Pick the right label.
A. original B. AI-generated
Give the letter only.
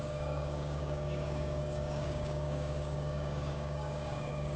B